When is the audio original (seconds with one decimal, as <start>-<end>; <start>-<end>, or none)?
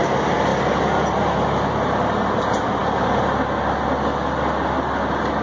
0.0-5.4